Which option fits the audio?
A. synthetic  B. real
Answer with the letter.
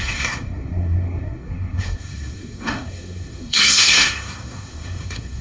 A